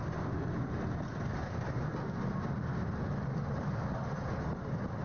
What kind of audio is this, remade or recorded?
recorded